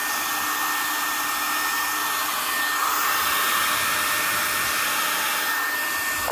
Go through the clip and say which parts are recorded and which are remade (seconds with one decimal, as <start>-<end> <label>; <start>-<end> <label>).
0.0-6.3 recorded